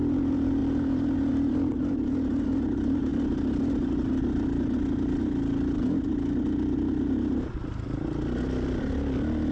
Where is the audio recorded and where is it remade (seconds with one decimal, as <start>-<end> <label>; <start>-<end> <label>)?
0.0-0.6 recorded; 0.6-1.3 remade; 1.3-9.5 recorded